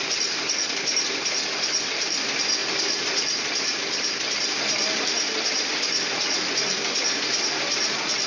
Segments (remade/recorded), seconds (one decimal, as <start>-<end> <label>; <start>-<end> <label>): 0.0-8.3 recorded